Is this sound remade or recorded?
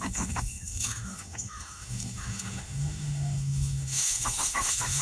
remade